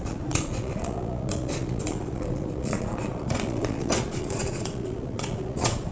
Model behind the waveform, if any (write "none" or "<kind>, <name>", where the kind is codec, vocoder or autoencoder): vocoder, Vocos